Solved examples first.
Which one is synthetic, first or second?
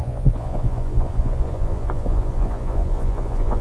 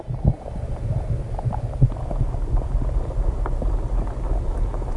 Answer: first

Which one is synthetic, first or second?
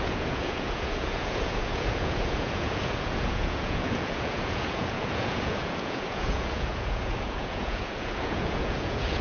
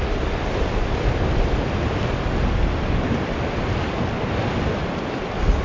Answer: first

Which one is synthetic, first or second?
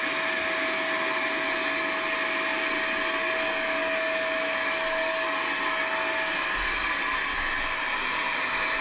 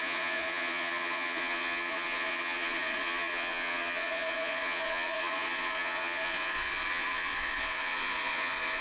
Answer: second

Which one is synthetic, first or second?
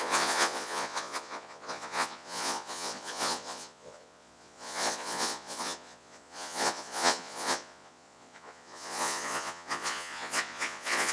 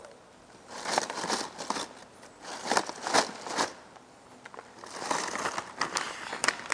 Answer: first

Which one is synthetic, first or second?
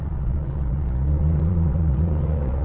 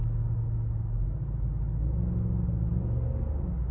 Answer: first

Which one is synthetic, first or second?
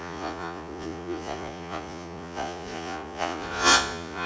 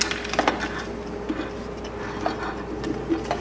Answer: first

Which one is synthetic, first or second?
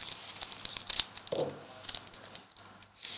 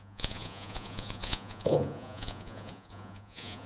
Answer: second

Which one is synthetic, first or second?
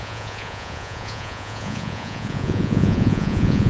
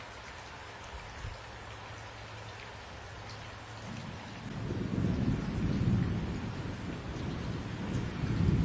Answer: first